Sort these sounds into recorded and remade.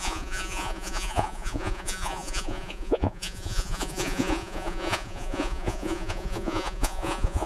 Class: remade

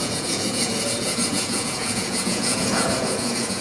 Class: remade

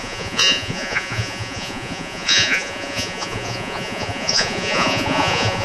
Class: remade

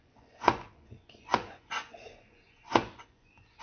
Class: remade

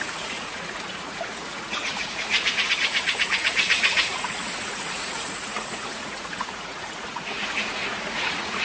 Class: remade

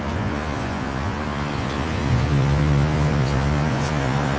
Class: remade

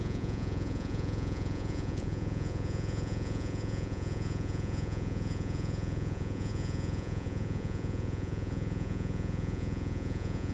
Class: remade